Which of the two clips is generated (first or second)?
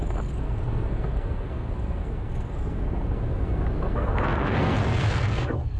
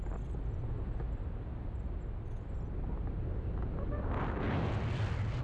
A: first